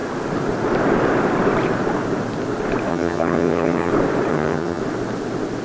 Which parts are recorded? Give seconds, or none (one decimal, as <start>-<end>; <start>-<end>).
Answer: 0.0-2.9; 3.9-4.3; 4.8-5.6